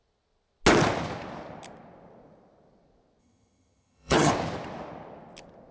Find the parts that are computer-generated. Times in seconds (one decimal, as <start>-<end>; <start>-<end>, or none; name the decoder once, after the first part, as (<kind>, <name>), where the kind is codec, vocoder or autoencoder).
3.2-4.3 (vocoder, HiFi-GAN)